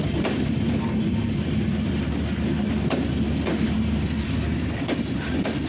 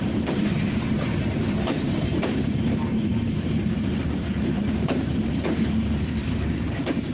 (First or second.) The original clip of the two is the first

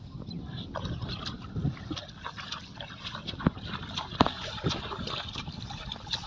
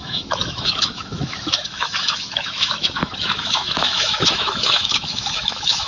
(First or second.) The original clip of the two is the first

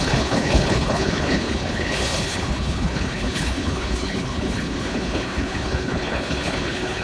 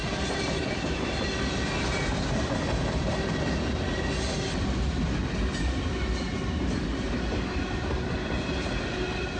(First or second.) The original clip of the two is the second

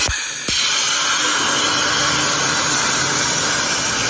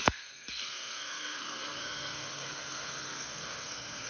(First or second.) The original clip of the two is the first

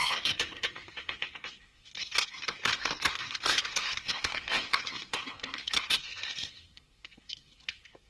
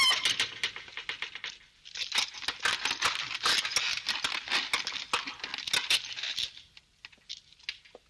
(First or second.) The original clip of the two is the second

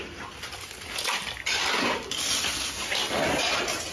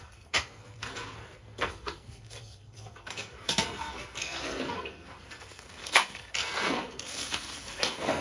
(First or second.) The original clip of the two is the first